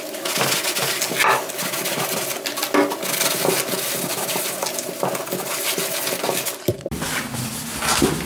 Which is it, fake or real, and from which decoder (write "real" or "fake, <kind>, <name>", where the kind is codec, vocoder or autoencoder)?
real